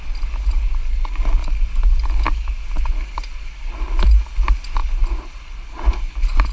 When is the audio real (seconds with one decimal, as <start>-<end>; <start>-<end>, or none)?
0.0-6.5